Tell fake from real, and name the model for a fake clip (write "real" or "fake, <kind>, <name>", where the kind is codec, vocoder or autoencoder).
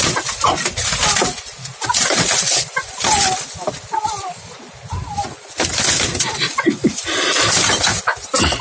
real